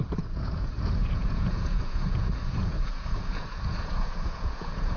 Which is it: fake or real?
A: fake